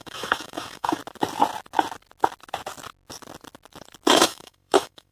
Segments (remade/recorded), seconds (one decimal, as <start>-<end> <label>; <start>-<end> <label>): 0.0-1.0 remade; 1.0-4.1 recorded; 4.1-5.1 remade